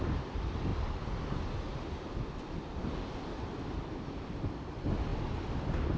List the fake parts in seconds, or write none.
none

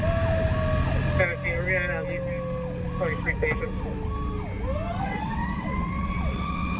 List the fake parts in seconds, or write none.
5.0-6.8 (vocoder, WaveNeXt)

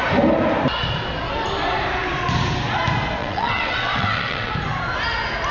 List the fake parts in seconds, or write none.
3.2-4.5 (vocoder, WaveNeXt)

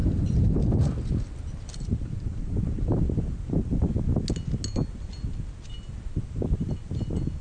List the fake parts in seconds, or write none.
none